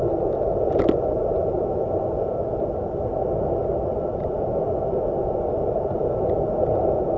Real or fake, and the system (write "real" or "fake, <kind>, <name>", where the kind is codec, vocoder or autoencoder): real